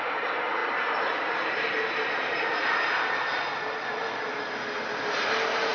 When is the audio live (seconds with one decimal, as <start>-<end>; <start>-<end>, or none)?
0.0-5.7